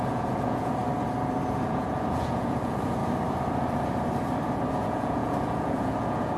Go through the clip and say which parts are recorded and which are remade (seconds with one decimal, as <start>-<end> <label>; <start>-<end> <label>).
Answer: 0.0-0.8 remade; 0.8-1.5 recorded; 1.5-3.0 remade; 3.0-4.7 recorded; 4.7-6.4 remade